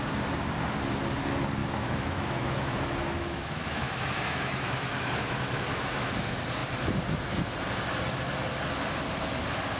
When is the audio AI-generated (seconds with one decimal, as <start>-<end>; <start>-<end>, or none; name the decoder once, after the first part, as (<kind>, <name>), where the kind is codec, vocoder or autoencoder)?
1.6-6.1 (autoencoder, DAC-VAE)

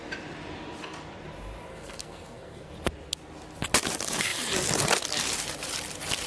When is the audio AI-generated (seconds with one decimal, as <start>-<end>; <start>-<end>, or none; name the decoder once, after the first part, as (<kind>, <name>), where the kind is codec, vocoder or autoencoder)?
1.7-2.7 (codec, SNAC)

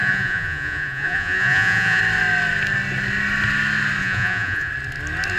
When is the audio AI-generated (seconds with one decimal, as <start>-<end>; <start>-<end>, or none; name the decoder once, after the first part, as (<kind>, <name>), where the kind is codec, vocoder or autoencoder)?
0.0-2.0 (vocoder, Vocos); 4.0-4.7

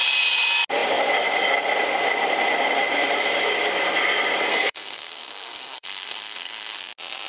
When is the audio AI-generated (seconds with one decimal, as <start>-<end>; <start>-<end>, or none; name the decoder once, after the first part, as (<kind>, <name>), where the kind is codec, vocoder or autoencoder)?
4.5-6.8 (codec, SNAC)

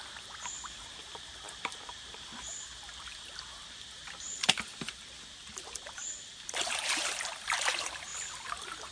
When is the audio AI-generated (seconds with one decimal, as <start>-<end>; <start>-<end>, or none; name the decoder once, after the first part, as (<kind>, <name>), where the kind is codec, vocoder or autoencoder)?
0.0-8.1 (vocoder, BigVGAN v2)

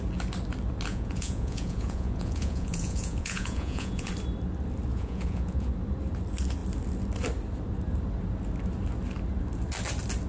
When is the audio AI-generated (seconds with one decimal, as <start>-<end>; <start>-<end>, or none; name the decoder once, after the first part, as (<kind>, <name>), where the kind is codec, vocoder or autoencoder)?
0.9-4.1 (vocoder, Vocos); 4.9-5.7